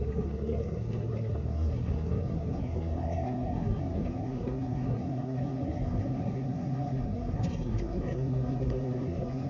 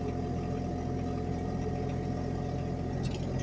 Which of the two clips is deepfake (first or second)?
first